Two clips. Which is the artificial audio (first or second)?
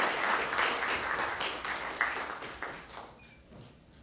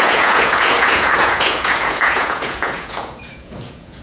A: second